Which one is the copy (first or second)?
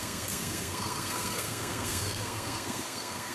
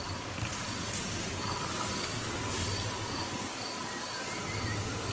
first